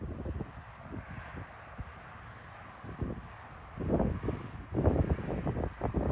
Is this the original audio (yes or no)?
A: yes